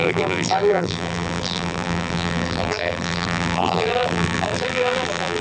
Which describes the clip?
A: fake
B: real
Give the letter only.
A